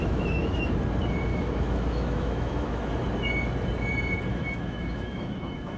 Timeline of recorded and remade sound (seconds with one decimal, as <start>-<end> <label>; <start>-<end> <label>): 0.0-0.7 remade; 0.7-1.3 recorded; 1.3-2.9 remade; 2.9-4.3 recorded; 4.3-5.8 remade